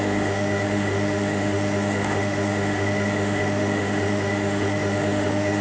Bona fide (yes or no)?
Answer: no